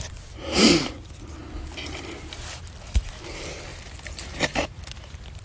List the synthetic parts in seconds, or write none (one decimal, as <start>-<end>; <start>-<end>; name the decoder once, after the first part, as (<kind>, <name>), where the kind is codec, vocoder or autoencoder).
3.7-4.8 (vocoder, BigVGAN v2)